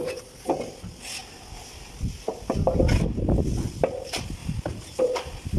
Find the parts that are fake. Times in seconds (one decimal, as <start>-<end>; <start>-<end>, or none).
4.4-5.0